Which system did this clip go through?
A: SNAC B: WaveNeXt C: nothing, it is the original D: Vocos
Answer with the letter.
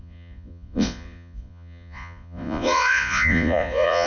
D